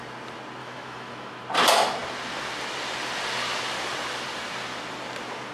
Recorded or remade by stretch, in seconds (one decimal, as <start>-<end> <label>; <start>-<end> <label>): 0.0-0.6 recorded; 0.6-1.4 remade; 1.4-5.5 recorded